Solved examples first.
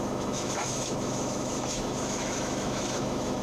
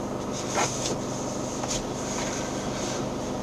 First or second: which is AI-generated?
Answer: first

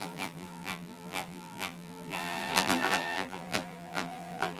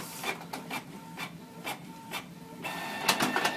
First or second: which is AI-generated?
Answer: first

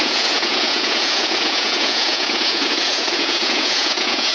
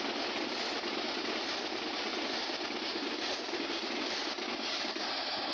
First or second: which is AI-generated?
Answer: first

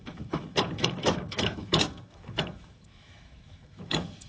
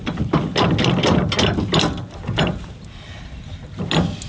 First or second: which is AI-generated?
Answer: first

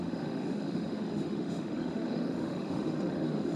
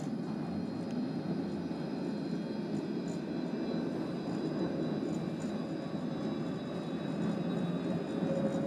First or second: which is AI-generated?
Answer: first